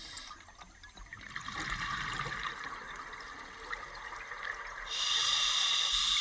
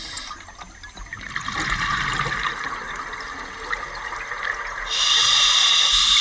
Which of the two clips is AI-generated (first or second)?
first